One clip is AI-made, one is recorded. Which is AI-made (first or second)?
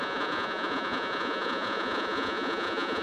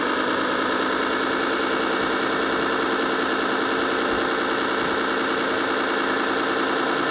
first